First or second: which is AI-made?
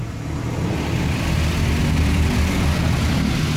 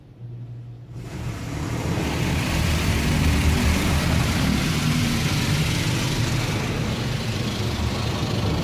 second